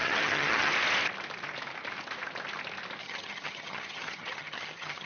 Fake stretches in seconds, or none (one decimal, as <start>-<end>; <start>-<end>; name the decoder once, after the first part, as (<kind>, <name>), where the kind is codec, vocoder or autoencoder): 0.0-0.7 (vocoder, HiFi-GAN); 3.0-5.1